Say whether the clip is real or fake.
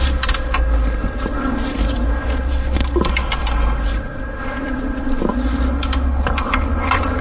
real